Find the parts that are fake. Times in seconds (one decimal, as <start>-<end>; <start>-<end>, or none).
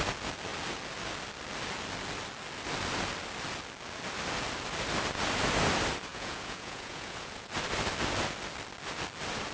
6.1-7.5